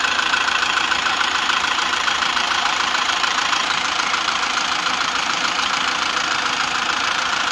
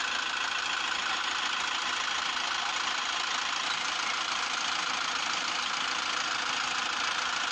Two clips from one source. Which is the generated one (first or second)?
first